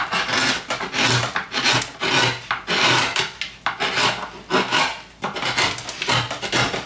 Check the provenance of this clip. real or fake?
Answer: real